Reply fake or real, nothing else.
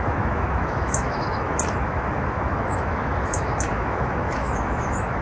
fake